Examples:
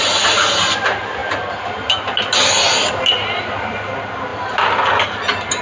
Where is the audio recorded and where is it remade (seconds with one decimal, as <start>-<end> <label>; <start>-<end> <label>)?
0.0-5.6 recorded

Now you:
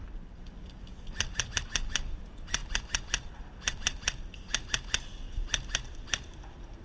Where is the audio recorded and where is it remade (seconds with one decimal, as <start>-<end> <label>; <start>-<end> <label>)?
0.0-6.8 recorded

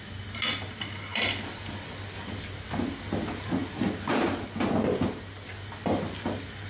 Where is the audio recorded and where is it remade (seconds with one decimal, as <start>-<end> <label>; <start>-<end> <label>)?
0.0-6.7 recorded

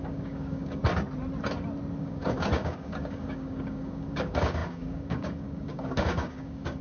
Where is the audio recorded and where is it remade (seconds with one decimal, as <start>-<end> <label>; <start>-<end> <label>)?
0.0-0.8 remade; 0.8-2.0 recorded; 2.0-6.8 remade

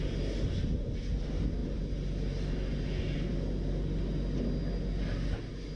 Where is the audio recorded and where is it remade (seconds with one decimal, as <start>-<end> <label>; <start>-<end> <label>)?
0.0-5.8 recorded

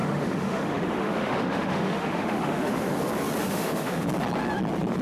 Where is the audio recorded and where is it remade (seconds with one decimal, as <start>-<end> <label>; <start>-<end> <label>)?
0.0-3.0 remade; 3.0-3.4 recorded; 3.4-4.1 remade; 4.1-5.0 recorded